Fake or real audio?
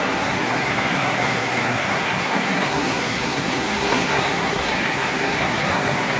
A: fake